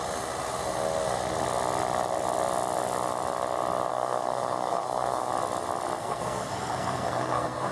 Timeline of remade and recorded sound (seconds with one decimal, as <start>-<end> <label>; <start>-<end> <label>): 0.0-3.9 recorded; 3.9-5.3 remade; 5.3-6.0 recorded; 6.0-7.7 remade